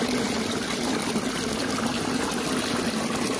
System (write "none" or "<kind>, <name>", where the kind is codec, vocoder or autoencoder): none